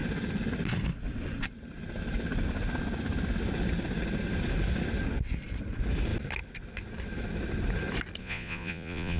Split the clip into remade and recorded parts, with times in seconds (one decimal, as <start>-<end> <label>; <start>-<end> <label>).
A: 0.0-8.2 recorded; 8.2-9.2 remade